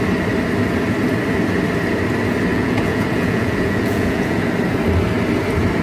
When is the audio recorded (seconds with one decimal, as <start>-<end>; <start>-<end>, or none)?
0.0-2.5; 4.5-5.8